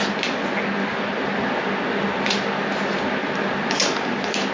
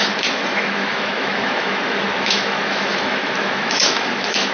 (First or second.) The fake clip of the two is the second